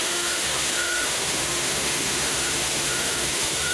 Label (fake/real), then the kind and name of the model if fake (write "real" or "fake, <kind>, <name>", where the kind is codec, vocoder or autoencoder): fake, autoencoder, DAC-VAE